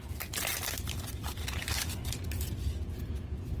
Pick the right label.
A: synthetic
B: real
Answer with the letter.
B